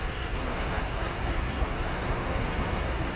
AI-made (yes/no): yes